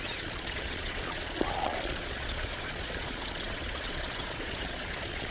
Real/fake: fake